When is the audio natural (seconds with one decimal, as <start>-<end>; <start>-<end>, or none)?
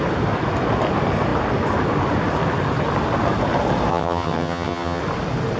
0.0-3.9; 5.0-5.6